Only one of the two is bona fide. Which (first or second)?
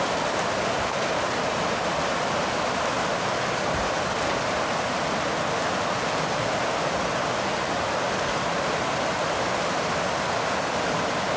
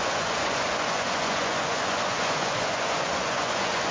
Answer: first